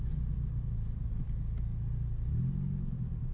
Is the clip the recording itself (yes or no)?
yes